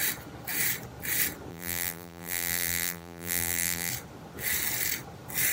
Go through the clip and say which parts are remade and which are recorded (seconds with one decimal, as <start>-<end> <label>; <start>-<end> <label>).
0.0-1.5 recorded; 1.5-3.9 remade; 3.9-5.5 recorded